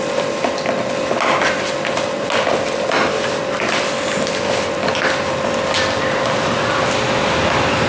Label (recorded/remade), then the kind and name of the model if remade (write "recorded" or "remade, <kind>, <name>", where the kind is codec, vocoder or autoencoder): recorded